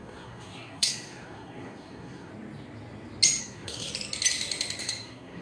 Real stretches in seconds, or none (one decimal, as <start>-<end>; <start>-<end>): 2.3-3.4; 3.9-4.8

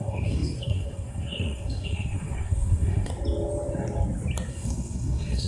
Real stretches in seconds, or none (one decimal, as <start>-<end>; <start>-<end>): 3.1-4.5

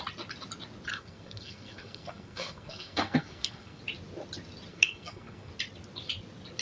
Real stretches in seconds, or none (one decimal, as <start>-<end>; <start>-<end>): 0.0-0.9; 3.8-4.7; 5.5-6.6